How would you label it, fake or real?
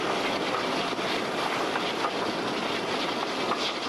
real